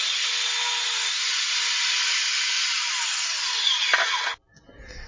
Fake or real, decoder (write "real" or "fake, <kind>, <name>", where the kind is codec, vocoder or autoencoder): real